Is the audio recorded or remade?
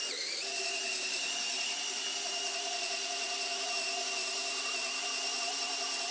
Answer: remade